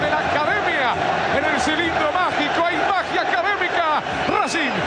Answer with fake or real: real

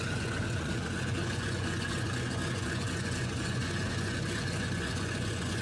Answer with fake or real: fake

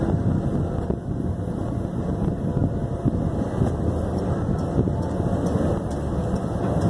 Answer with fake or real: real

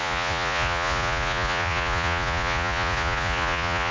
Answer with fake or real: fake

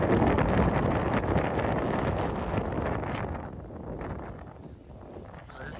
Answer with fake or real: real